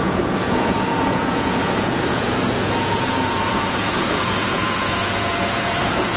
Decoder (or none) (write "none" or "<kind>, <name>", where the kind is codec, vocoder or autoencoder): vocoder, Vocos